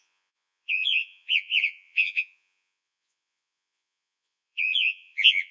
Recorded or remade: remade